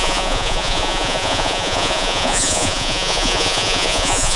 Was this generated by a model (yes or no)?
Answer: yes